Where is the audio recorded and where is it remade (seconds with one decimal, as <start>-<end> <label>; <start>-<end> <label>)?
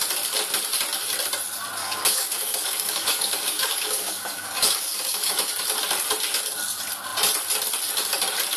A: 0.0-1.8 recorded; 1.8-5.5 remade; 5.5-8.6 recorded